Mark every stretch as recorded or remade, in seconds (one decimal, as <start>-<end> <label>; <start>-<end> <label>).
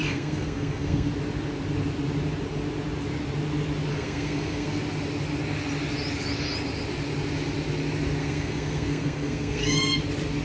0.0-1.1 remade; 1.1-3.9 recorded; 3.9-4.8 remade; 4.8-8.2 recorded; 8.2-10.0 remade; 10.0-10.4 recorded